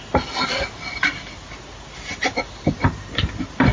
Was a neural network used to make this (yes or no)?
no